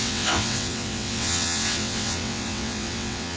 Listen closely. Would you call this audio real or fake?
fake